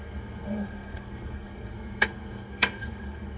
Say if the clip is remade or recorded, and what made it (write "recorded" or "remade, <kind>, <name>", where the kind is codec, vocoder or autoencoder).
remade, codec, SNAC